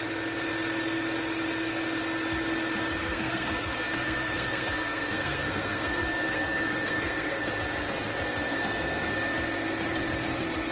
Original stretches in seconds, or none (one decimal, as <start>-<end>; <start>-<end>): 0.0-3.0; 7.5-8.3; 9.1-10.7